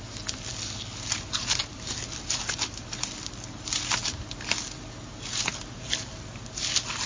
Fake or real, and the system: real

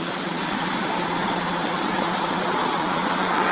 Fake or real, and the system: fake, vocoder, Vocos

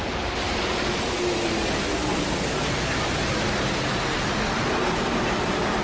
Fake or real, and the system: real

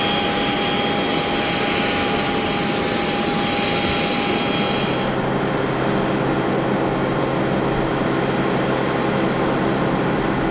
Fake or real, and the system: real